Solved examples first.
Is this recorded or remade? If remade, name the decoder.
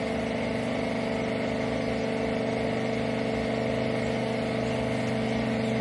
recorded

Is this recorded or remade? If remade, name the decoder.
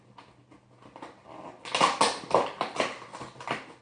recorded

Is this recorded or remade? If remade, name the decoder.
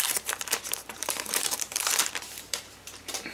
remade, vocoder, BigVGAN v2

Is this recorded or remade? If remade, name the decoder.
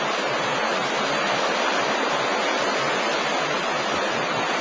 recorded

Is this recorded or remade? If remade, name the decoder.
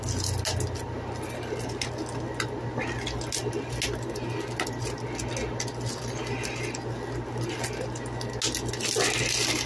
recorded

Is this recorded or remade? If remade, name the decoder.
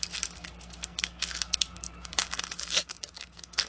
remade, codec, SNAC